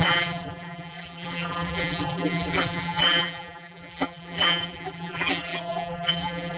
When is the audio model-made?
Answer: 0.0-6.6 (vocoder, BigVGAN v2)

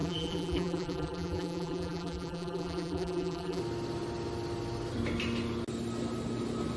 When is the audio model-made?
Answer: 0.0-3.6 (vocoder, BigVGAN v2)